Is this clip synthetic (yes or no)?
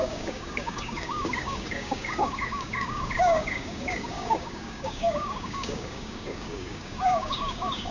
yes